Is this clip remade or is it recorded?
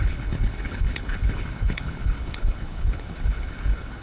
remade